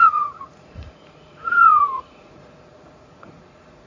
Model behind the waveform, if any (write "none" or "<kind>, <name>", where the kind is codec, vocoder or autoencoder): vocoder, Vocos